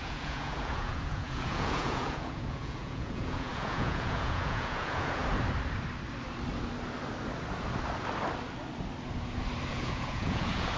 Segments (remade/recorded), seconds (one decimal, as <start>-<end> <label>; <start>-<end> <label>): 0.0-5.2 remade; 5.2-9.7 recorded; 9.7-10.8 remade